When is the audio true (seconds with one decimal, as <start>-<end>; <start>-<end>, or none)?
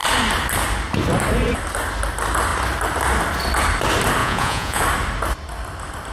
0.0-4.2; 4.8-6.1